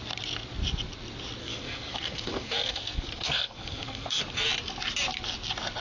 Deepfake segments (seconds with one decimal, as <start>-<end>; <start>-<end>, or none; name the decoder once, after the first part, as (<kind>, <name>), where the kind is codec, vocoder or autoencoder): 1.4-4.2 (codec, SNAC)